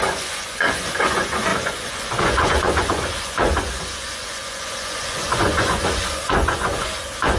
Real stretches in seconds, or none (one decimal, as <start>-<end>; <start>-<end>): none